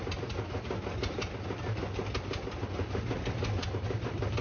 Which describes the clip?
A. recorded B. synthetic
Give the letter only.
A